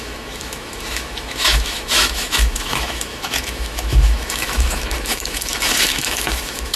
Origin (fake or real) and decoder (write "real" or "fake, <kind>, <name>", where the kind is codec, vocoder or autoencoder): fake, autoencoder, DAC-VAE